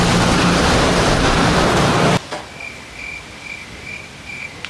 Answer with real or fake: real